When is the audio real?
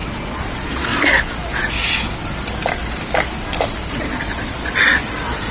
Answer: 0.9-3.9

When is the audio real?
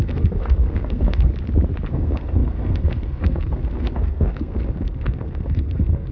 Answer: 1.3-1.9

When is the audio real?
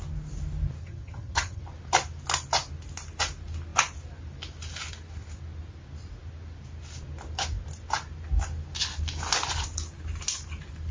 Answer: 0.0-0.8; 1.6-10.9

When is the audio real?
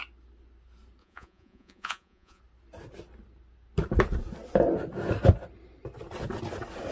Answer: 0.0-1.0; 2.4-6.9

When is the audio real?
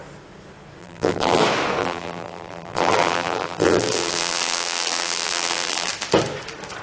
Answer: 0.0-0.8; 1.4-1.8; 5.9-6.8